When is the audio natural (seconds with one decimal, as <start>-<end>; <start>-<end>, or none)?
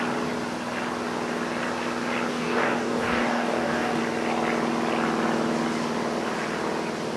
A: 0.0-2.3; 4.0-7.2